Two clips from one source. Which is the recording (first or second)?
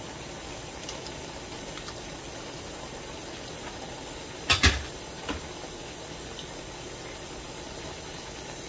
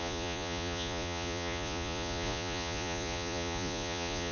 first